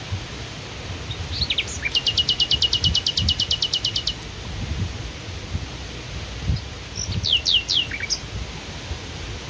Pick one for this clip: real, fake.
real